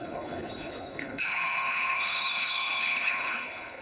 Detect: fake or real fake